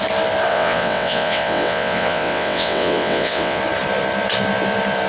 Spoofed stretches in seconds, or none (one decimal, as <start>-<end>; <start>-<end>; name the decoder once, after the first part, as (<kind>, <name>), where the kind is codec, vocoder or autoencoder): 0.5-3.6 (vocoder, WaveNeXt)